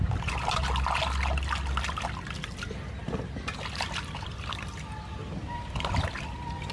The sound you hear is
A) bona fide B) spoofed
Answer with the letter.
A